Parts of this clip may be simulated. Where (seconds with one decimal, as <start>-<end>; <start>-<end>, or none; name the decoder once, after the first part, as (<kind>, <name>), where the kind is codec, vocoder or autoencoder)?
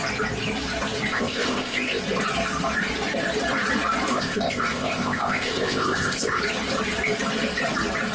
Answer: 1.1-2.0 (codec, ZipCodec); 4.1-6.4